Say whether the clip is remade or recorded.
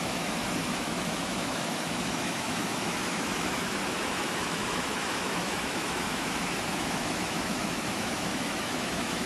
remade